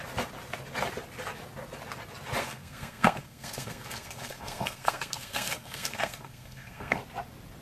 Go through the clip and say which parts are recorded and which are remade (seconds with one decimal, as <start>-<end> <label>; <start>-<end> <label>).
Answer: 0.0-2.4 recorded; 2.4-7.0 remade; 7.0-7.6 recorded